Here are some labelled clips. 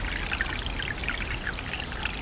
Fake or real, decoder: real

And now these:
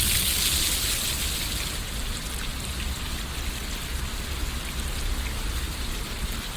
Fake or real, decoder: real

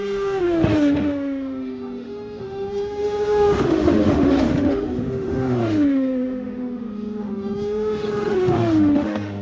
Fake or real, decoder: fake, autoencoder, DAC-VAE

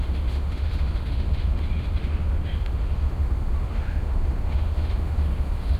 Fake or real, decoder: fake, autoencoder, DAC-VAE